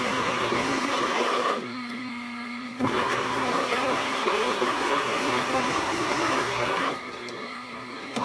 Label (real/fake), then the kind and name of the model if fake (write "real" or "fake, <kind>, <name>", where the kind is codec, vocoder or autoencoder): fake, codec, SNAC